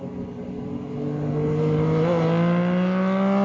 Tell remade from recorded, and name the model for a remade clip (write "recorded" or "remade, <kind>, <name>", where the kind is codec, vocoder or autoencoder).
recorded